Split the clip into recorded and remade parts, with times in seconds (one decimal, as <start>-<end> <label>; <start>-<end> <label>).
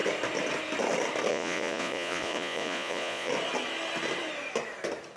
0.0-1.3 recorded; 1.3-3.3 remade; 3.3-5.2 recorded